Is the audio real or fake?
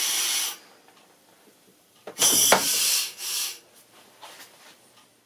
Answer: fake